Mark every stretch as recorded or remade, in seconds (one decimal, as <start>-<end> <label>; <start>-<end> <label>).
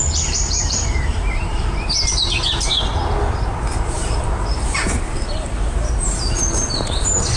0.0-2.9 remade; 2.9-3.7 recorded; 3.7-7.4 remade